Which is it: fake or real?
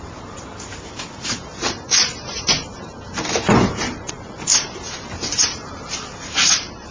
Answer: fake